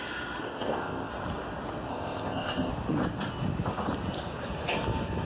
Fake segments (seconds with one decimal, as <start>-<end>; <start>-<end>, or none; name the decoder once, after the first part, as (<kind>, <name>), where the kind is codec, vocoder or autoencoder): 0.4-1.1 (codec, ZipCodec); 1.9-2.7